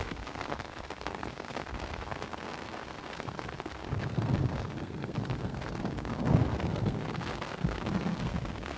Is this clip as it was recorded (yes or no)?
no